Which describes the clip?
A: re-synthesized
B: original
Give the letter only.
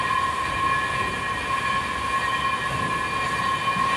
B